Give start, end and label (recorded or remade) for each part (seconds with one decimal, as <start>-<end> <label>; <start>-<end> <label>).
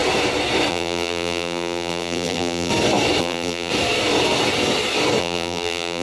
0.0-0.7 recorded; 0.7-2.7 remade; 2.7-3.2 recorded; 3.2-3.7 remade; 3.7-5.2 recorded; 5.2-6.0 remade